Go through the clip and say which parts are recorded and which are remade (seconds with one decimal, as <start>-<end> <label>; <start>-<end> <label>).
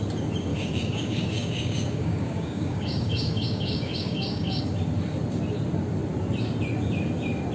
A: 0.0-0.5 recorded; 0.5-4.6 remade; 4.6-7.5 recorded